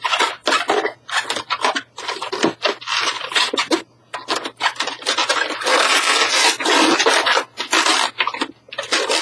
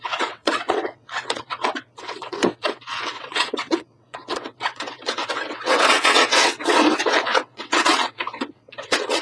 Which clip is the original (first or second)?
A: first